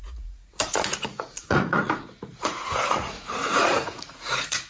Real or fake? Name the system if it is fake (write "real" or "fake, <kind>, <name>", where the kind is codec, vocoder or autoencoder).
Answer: fake, vocoder, Vocos